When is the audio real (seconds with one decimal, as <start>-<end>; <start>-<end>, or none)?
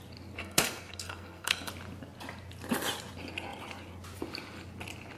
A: 0.0-0.4; 1.7-5.2